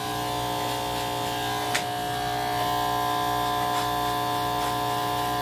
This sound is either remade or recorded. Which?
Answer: recorded